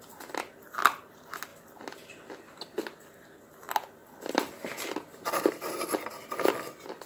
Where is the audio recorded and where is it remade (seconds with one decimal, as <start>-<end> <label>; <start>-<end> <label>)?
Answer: 0.0-7.1 recorded